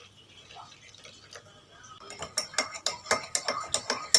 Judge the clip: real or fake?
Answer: real